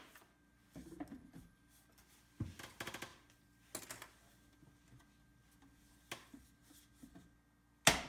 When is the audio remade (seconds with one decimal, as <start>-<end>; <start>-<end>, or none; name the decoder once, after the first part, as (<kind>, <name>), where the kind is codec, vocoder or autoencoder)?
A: none